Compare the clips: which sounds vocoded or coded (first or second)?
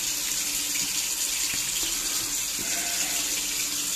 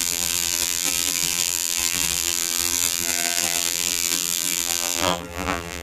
second